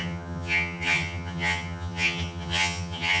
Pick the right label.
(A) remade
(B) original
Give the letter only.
A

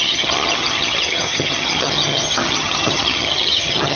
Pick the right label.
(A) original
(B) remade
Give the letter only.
B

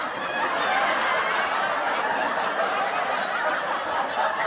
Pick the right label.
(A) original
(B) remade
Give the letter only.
A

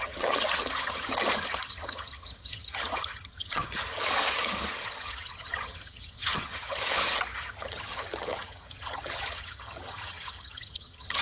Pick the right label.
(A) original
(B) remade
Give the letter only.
B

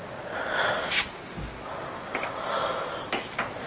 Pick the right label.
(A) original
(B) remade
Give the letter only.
A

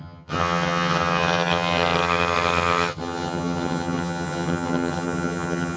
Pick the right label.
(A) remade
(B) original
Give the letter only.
A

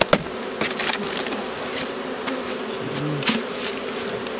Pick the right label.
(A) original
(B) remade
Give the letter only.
A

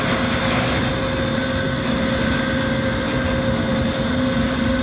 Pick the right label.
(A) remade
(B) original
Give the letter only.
B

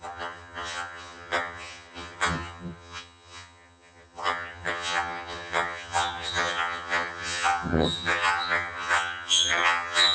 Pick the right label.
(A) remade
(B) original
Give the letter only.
A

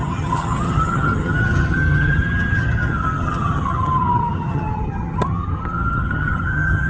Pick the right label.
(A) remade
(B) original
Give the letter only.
A